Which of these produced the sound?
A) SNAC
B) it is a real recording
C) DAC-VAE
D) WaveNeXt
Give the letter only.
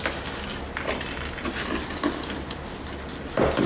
B